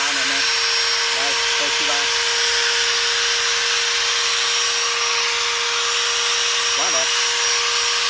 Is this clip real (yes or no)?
yes